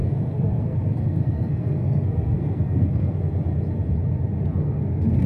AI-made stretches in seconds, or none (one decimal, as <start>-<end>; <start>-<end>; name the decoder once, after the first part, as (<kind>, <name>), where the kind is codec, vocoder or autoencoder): 0.0-3.2 (codec, SNAC); 4.6-5.3